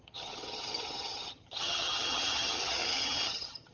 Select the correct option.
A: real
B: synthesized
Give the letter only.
B